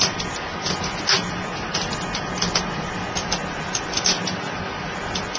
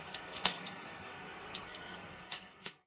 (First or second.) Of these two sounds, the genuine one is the first